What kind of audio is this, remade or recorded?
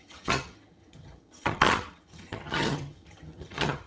remade